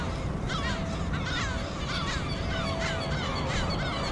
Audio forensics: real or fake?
real